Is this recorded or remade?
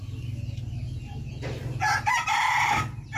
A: recorded